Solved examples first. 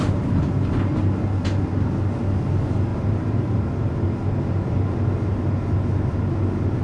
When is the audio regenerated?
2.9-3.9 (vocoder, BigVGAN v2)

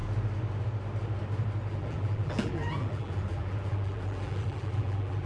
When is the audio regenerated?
1.7-5.3 (vocoder, BigVGAN v2)

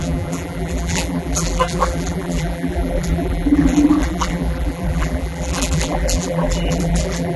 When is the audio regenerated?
0.0-7.4 (vocoder, BigVGAN v2)

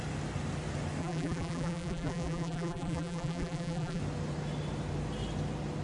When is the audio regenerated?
1.0-4.0 (vocoder, BigVGAN v2)